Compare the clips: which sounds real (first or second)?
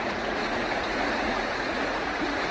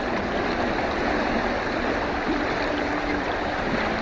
second